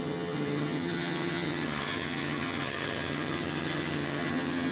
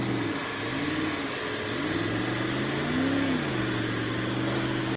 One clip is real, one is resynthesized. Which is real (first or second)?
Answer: second